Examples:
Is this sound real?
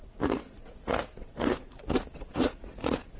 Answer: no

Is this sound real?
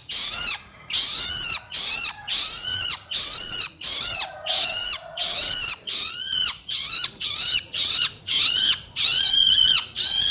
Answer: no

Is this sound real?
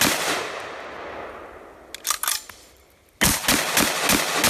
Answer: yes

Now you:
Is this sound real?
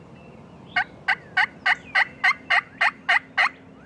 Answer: yes